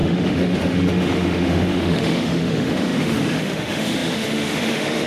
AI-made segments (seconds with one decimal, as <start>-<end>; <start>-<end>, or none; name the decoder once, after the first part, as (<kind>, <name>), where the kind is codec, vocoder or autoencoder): 0.0-5.1 (autoencoder, DAC-VAE)